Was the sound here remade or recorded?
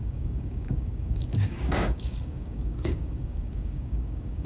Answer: remade